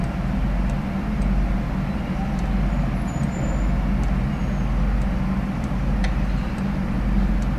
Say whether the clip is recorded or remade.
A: recorded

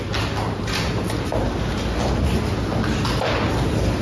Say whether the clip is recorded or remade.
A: recorded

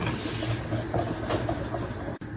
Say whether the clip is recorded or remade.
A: recorded